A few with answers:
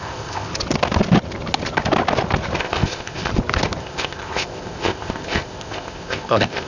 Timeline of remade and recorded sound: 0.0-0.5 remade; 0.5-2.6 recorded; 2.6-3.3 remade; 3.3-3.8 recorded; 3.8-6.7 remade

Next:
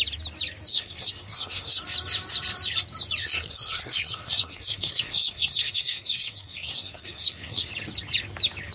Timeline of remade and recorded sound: 0.0-0.7 recorded; 0.7-1.8 remade; 1.8-3.2 recorded; 3.2-7.7 remade; 7.7-8.7 recorded

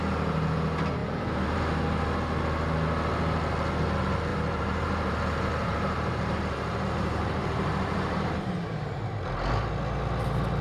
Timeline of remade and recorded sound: 0.0-1.0 recorded; 1.0-1.6 remade; 1.6-4.3 recorded; 4.3-9.0 remade; 9.0-10.6 recorded

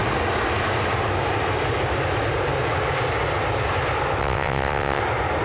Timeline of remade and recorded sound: 0.0-4.2 recorded; 4.2-5.0 remade; 5.0-5.4 recorded

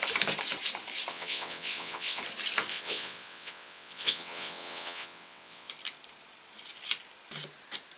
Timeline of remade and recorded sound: 0.0-1.1 recorded; 1.1-2.2 remade; 2.2-2.7 recorded; 2.7-5.7 remade; 5.7-8.0 recorded

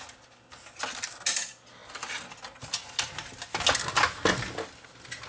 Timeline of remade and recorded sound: 0.0-5.3 recorded

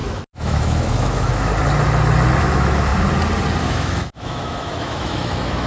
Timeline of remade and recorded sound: 0.0-1.5 remade; 1.5-2.4 recorded; 2.4-2.9 remade; 2.9-3.6 recorded; 3.6-5.7 remade

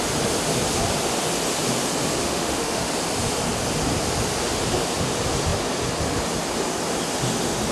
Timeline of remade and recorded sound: 0.0-2.2 recorded; 2.2-2.9 remade; 2.9-7.7 recorded